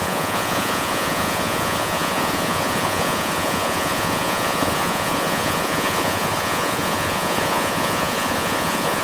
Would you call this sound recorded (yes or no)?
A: no